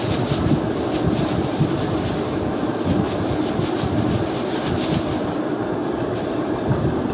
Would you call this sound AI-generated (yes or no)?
no